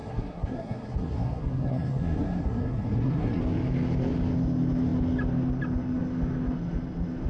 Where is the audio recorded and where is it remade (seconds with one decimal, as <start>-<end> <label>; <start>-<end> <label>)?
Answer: 0.0-3.4 remade; 3.4-7.3 recorded